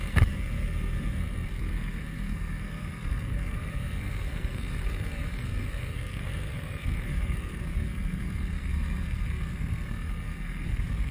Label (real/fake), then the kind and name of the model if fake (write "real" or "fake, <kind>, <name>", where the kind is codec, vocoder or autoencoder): fake, codec, SNAC